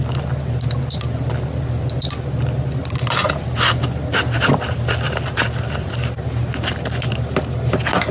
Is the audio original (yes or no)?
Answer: yes